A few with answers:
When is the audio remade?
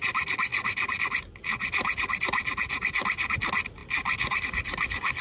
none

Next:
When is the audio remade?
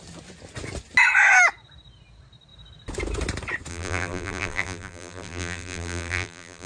3.7-6.7 (vocoder, BigVGAN v2)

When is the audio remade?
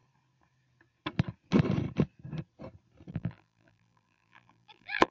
3.1-5.1 (vocoder, BigVGAN v2)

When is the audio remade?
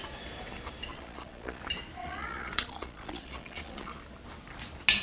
0.9-1.6 (vocoder, Vocos); 2.0-4.0